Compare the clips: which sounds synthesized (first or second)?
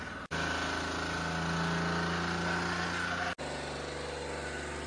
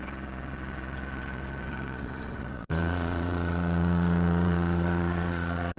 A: second